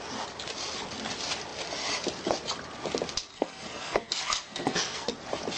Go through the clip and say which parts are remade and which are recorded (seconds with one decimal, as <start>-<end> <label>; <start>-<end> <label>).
0.0-3.3 recorded; 3.3-5.1 remade; 5.1-5.6 recorded